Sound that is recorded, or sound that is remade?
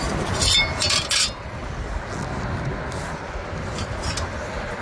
recorded